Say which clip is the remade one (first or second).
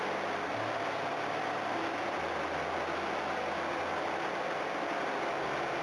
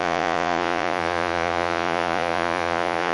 second